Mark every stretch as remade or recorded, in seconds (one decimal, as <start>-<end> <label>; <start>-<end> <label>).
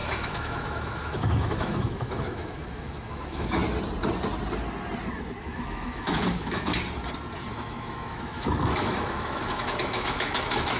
0.0-3.6 remade; 3.6-5.4 recorded; 5.4-6.7 remade; 6.7-7.5 recorded; 7.5-10.8 remade